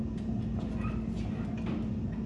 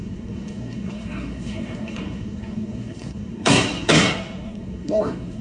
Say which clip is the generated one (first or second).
second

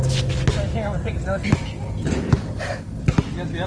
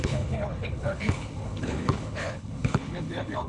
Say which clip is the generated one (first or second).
second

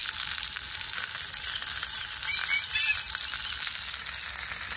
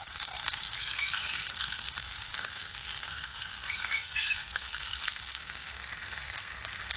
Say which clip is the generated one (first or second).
second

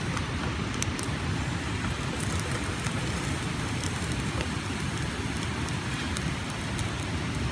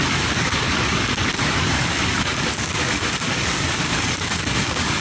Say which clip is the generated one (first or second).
second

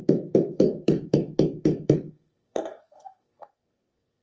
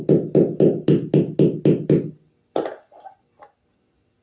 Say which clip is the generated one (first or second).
first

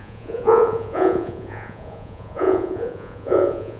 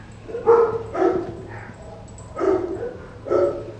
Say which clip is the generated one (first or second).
first